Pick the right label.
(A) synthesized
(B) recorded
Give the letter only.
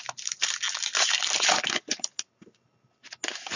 B